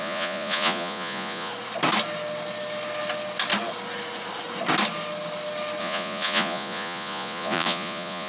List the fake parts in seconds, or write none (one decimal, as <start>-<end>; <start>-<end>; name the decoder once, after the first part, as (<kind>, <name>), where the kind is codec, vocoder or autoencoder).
0.0-1.5 (vocoder, Vocos); 5.8-8.3